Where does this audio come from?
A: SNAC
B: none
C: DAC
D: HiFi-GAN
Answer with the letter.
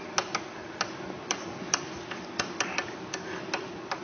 B